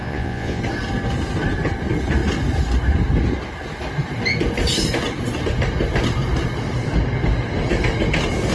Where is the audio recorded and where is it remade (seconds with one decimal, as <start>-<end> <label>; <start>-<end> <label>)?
0.0-0.6 remade; 0.6-8.5 recorded